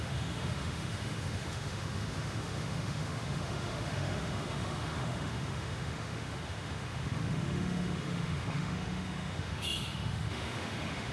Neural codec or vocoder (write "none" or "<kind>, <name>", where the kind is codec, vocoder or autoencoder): autoencoder, DAC-VAE